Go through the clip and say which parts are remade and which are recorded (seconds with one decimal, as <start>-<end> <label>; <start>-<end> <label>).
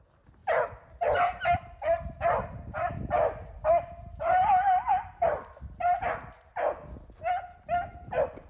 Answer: 0.0-8.5 recorded